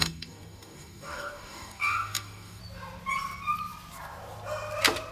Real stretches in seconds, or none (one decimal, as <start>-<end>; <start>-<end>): 2.6-5.1